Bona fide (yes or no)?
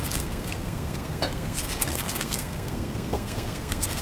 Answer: no